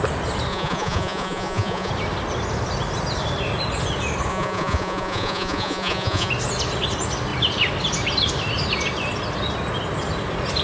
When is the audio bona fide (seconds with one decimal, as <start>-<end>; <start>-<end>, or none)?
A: 0.0-0.5; 1.9-4.3; 6.3-10.6